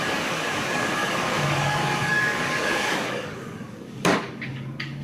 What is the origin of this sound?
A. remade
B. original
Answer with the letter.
A